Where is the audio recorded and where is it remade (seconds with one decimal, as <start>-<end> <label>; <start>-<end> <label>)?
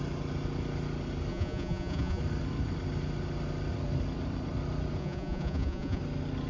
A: 0.0-1.3 recorded; 1.3-2.2 remade; 2.2-5.0 recorded; 5.0-6.0 remade; 6.0-6.5 recorded